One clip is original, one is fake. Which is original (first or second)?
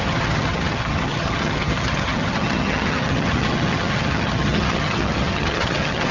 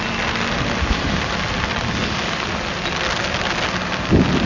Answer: second